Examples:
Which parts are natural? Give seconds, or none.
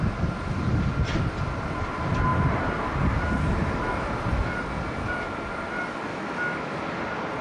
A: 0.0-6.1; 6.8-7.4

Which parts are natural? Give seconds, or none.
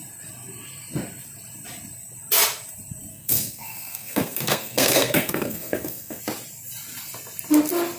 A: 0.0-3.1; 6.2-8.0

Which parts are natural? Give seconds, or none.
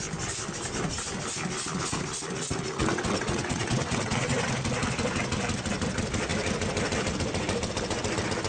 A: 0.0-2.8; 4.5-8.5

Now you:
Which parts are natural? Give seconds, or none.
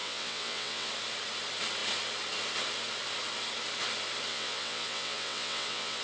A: 0.9-4.3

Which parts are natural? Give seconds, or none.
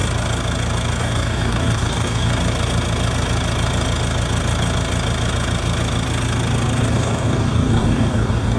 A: 0.0-1.0; 2.3-6.9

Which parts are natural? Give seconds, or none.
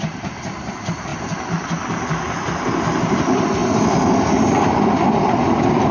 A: 0.0-5.9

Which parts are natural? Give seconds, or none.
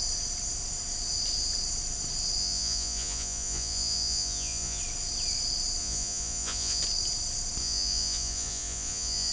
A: 0.0-2.4; 4.8-5.8; 6.8-7.6